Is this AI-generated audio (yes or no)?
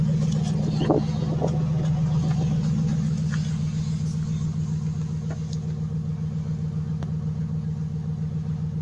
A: no